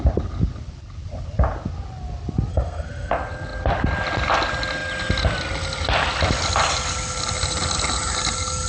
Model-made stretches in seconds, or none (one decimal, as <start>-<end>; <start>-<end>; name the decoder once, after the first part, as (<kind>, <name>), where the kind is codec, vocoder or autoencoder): 2.5-3.1 (codec, SNAC)